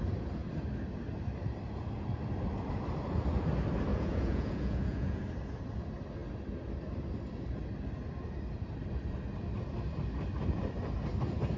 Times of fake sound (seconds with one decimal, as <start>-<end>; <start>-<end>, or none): 3.9-5.2

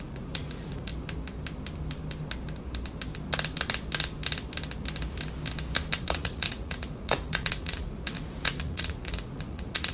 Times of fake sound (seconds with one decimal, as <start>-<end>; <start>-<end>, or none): 0.0-0.9; 6.0-9.9

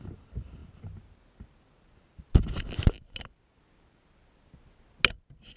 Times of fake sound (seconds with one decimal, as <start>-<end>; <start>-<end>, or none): none

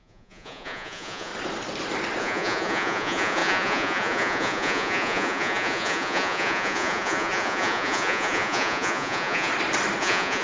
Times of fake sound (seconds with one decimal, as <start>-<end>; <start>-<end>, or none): 0.0-1.3; 2.2-9.5; 10.0-10.4

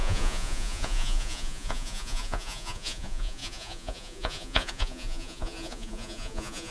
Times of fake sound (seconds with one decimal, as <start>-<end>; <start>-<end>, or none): 0.0-6.7

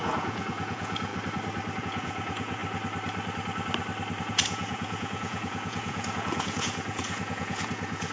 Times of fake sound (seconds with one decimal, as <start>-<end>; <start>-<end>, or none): 0.0-1.1; 1.8-2.6; 4.2-8.1

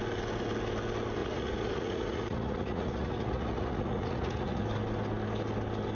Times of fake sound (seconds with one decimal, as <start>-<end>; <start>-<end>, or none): 1.2-4.6

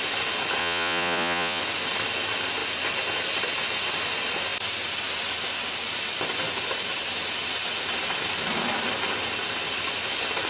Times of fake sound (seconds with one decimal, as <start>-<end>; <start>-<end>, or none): 0.6-1.6